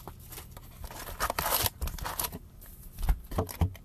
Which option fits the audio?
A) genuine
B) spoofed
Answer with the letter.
A